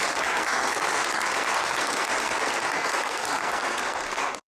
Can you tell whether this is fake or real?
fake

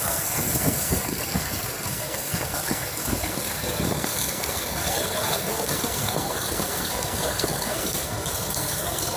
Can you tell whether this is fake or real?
fake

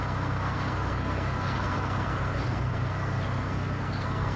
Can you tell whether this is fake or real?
fake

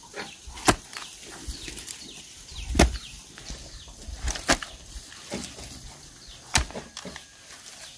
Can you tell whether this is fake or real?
real